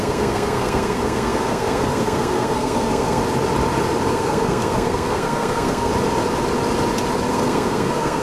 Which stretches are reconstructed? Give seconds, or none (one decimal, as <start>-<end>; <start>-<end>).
0.0-3.2; 4.1-5.9; 7.3-8.2